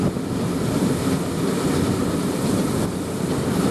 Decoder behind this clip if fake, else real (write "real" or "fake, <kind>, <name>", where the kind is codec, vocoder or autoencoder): real